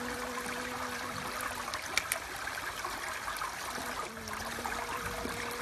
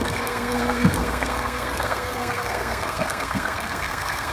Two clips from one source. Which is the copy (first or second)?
second